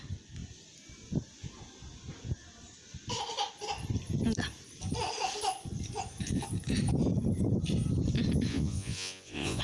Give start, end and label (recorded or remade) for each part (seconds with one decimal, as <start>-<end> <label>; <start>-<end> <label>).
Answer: 0.0-8.5 recorded; 8.5-9.6 remade